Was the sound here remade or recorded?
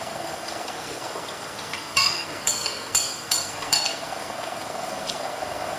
remade